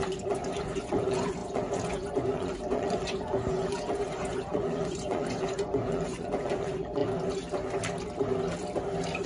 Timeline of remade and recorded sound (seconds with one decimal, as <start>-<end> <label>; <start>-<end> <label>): 0.0-7.0 remade; 7.0-9.3 recorded